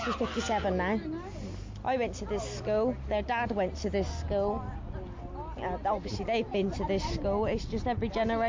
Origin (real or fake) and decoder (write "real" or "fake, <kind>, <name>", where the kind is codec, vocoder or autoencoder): real